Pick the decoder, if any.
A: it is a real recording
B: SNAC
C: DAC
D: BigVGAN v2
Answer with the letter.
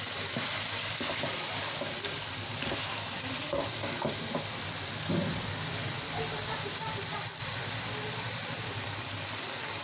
D